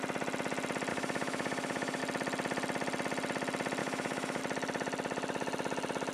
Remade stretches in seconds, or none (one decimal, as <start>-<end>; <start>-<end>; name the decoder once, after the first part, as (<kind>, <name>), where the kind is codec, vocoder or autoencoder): 0.9-2.0 (autoencoder, DAC-VAE); 3.8-4.4